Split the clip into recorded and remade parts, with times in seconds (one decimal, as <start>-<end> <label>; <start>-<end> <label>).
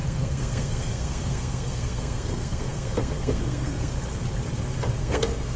0.0-3.9 remade; 3.9-5.0 recorded; 5.0-5.6 remade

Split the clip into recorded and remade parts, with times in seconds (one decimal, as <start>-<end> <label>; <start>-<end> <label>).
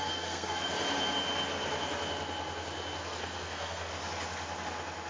0.0-0.7 remade; 0.7-3.0 recorded; 3.0-3.9 remade; 3.9-5.1 recorded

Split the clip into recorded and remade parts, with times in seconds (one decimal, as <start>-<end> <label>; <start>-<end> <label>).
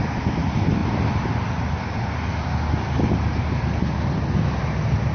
0.0-5.1 recorded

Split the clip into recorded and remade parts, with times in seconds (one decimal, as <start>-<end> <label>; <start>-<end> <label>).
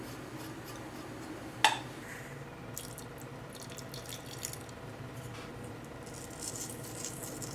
0.0-7.5 recorded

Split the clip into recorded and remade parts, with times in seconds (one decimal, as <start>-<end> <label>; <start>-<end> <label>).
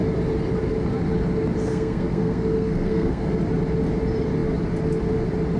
0.0-1.7 recorded; 1.7-3.3 remade; 3.3-5.6 recorded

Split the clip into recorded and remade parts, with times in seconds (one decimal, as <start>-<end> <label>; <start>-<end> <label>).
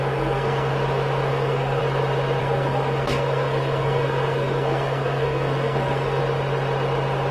0.0-0.7 remade; 0.7-1.3 recorded; 1.3-1.8 remade; 1.8-2.4 recorded; 2.4-6.2 remade; 6.2-7.3 recorded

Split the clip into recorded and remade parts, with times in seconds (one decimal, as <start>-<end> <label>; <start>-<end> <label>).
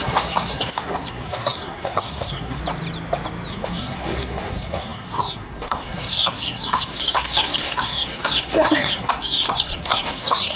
0.0-2.6 remade; 2.6-3.5 recorded; 3.5-10.6 remade